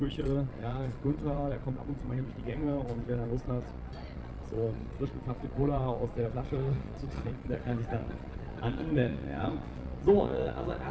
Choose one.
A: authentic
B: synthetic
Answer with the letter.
B